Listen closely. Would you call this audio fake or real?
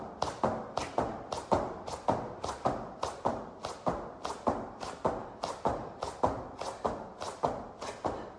real